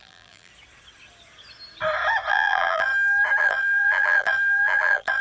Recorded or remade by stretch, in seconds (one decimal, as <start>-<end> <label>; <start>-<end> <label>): 0.0-0.5 remade; 0.5-2.3 recorded; 2.3-2.9 remade; 2.9-3.4 recorded; 3.4-5.2 remade